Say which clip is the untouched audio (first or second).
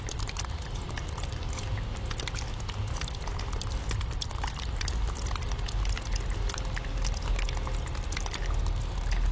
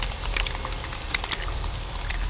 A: first